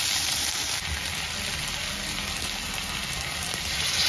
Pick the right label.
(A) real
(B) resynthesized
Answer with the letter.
A